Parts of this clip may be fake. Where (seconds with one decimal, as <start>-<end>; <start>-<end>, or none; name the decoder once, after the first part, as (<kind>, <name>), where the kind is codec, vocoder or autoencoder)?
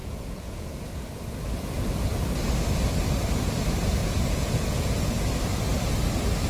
0.0-0.8 (vocoder, Vocos); 4.0-5.0